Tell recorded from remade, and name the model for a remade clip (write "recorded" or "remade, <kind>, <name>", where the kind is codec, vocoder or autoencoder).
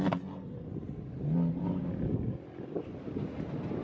recorded